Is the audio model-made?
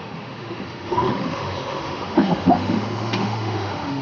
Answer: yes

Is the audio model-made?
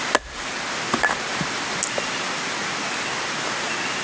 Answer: no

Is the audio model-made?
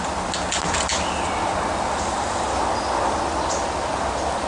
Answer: no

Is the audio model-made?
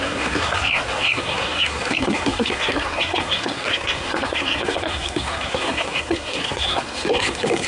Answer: yes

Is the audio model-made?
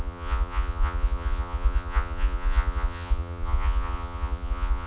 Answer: yes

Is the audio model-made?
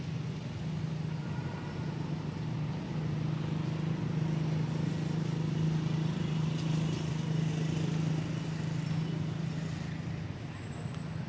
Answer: no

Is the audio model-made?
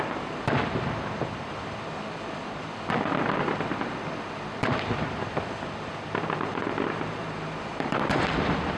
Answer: yes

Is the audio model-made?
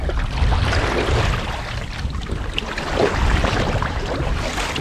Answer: no